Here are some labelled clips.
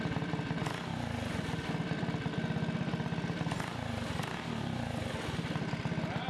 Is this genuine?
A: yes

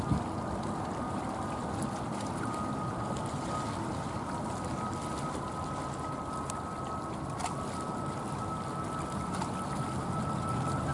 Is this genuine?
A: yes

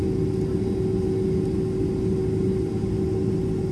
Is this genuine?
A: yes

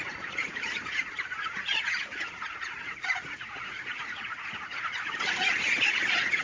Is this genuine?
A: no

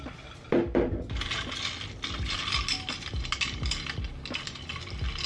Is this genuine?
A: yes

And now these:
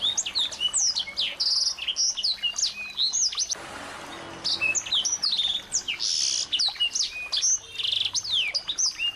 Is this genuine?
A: yes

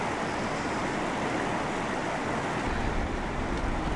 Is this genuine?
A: yes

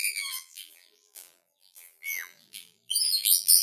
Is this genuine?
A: no